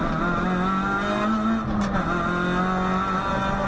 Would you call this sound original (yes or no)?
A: yes